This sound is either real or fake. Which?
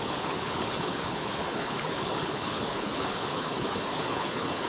fake